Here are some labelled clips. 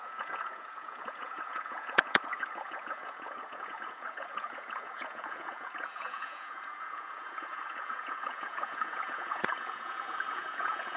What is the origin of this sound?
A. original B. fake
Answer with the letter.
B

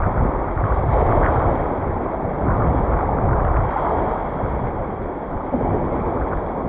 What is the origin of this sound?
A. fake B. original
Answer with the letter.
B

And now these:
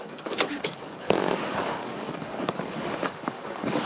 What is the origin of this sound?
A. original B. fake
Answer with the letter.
B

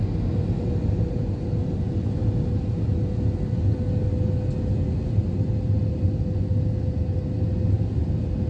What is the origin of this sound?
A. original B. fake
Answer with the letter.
A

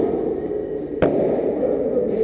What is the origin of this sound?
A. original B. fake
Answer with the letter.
A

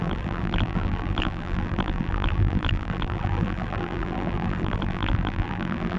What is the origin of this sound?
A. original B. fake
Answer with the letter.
B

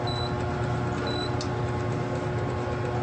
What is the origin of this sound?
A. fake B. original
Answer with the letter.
B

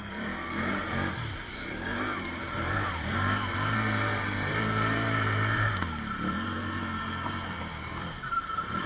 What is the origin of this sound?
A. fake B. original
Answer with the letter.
A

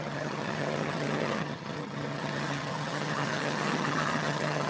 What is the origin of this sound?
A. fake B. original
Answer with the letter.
A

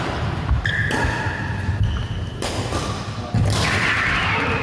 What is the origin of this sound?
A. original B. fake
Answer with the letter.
A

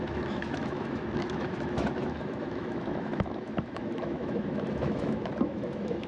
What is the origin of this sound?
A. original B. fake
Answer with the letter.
B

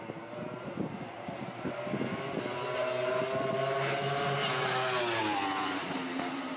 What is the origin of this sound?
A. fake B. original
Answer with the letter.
B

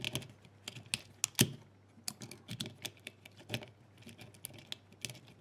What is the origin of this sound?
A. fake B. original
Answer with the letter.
B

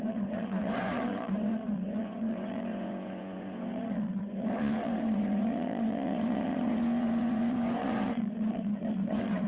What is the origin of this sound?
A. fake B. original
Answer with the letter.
A